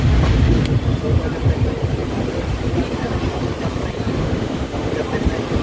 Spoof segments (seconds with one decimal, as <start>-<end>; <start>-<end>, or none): 4.2-4.9